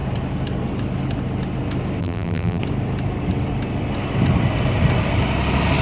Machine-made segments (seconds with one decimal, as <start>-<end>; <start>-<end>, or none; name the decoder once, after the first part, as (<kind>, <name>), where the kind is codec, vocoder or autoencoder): 2.0-2.6 (vocoder, BigVGAN v2)